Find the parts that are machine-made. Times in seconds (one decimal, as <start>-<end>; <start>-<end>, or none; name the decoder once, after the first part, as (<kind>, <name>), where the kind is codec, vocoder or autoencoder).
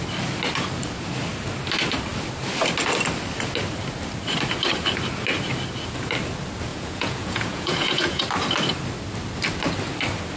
6.7-8.2 (vocoder, Vocos)